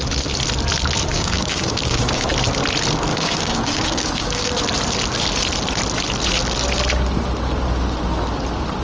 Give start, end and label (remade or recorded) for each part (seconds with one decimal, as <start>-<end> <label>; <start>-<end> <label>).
0.0-1.1 recorded; 1.1-2.3 remade; 2.3-3.1 recorded; 3.1-4.5 remade; 4.5-8.8 recorded